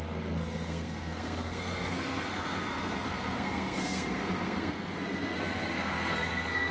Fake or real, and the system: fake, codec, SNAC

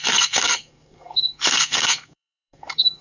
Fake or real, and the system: fake, codec, SNAC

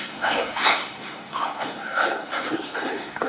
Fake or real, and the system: fake, codec, SNAC